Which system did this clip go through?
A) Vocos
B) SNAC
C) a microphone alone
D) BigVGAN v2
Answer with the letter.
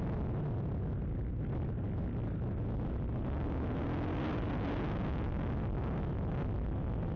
C